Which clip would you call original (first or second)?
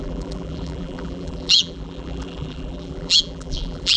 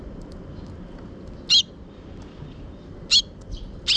second